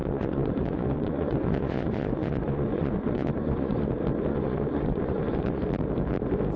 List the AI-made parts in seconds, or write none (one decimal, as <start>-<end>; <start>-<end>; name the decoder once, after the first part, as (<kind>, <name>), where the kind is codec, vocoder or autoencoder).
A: 0.0-3.9 (vocoder, Vocos); 4.3-5.6